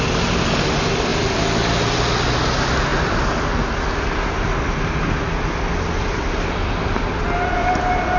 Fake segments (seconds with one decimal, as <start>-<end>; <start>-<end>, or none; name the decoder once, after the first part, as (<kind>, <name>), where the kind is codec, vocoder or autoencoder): none